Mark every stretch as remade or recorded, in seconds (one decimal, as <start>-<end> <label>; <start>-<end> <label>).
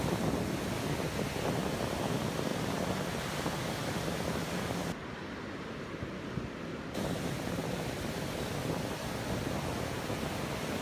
0.0-10.8 recorded